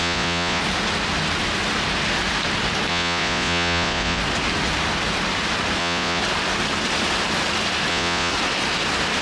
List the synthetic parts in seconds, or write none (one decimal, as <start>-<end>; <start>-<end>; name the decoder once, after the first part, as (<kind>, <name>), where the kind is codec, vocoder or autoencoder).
0.0-0.6 (vocoder, Vocos); 2.9-4.2; 5.8-6.2; 7.9-8.3